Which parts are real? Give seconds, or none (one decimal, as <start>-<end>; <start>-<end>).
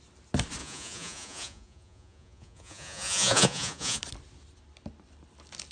0.0-0.6; 4.0-5.7